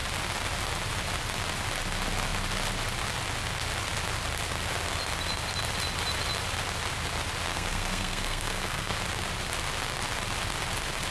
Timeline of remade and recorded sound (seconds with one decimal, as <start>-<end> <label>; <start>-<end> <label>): 0.0-7.5 recorded; 7.5-9.0 remade; 9.0-11.1 recorded